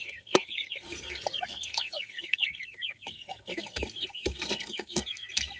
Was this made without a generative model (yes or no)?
no